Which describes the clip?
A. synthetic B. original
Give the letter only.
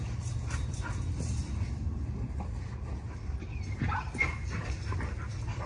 B